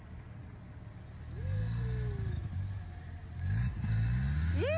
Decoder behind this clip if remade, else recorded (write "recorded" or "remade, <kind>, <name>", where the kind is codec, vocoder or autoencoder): recorded